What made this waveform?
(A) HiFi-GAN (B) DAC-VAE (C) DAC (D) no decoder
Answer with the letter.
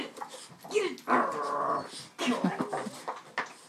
D